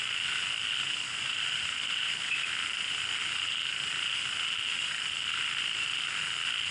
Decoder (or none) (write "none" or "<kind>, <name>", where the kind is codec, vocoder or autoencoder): none